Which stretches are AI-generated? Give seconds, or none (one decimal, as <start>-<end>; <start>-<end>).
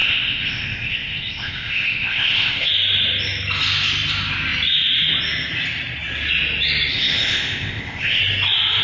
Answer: 0.0-2.7; 6.9-8.2